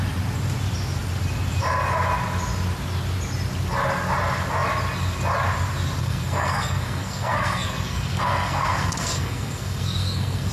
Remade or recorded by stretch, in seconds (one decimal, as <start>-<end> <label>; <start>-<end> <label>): 0.0-6.0 recorded; 6.0-10.5 remade